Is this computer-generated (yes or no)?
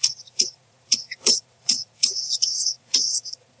yes